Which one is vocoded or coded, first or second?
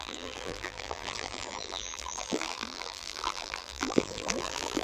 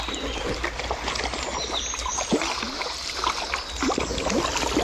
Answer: first